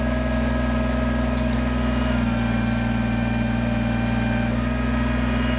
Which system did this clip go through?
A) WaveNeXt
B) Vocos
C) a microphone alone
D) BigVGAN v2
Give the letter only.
C